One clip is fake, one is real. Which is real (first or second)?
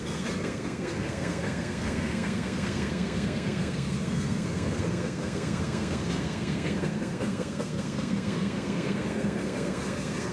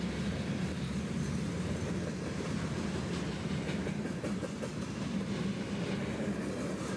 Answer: second